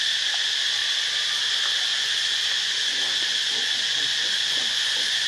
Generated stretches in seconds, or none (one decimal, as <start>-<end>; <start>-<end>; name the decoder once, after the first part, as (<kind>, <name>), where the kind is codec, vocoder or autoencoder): 1.9-5.3 (vocoder, Vocos)